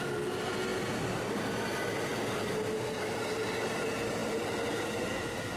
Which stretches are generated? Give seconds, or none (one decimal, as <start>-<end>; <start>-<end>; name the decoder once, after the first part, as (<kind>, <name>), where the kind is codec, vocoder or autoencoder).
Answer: none